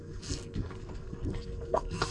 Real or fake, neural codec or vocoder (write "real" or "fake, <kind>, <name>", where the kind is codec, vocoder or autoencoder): fake, codec, SNAC